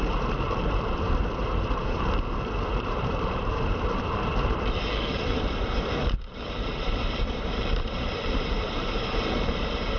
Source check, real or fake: fake